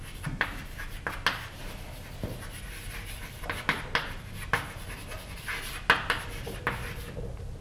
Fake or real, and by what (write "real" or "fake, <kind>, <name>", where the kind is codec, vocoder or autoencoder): real